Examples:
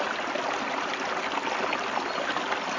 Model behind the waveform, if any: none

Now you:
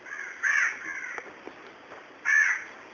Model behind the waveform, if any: none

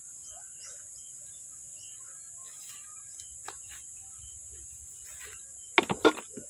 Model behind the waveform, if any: none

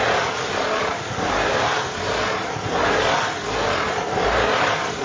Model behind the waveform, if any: none